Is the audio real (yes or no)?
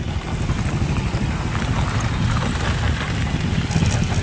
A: yes